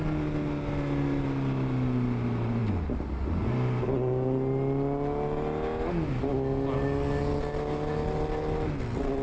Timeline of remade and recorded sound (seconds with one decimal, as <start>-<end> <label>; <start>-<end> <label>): 0.0-9.2 recorded